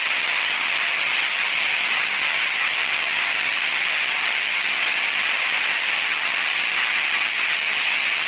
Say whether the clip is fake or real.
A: fake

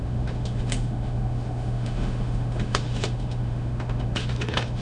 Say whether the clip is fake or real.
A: fake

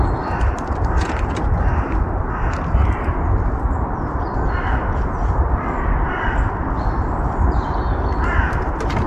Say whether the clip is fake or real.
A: real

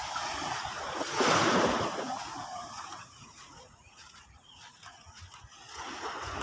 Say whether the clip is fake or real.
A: fake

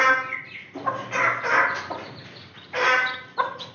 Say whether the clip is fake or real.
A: real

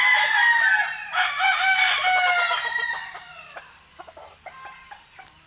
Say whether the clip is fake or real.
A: real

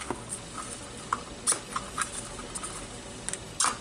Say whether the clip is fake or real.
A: real